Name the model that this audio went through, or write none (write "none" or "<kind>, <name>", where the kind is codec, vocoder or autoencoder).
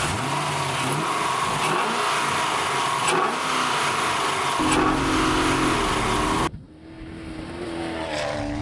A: none